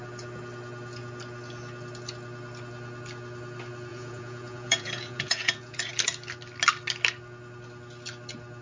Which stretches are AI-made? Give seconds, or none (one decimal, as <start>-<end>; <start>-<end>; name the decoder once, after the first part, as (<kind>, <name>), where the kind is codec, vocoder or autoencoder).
3.9-5.9 (vocoder, Vocos)